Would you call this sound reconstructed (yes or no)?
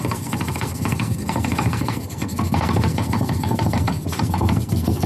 yes